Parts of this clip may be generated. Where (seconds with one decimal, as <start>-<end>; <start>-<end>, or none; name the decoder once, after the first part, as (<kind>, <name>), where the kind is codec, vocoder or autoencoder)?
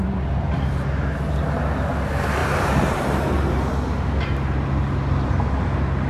2.4-3.7 (vocoder, BigVGAN v2)